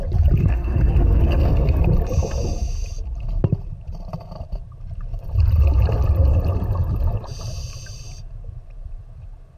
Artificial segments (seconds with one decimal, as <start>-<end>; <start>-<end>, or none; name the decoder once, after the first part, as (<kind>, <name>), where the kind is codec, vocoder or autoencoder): 0.4-1.8 (codec, SNAC)